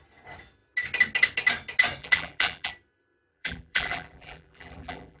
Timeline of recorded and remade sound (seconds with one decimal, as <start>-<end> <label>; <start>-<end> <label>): 0.0-2.0 recorded; 2.0-2.7 remade; 2.7-3.3 recorded; 3.3-5.2 remade